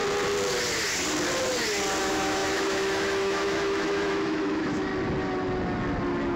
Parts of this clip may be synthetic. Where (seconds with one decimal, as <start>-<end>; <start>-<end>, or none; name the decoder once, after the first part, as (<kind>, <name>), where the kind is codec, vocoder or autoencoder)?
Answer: 2.0-4.9 (autoencoder, DAC-VAE)